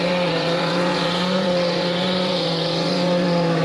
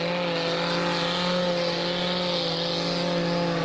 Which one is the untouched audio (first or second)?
second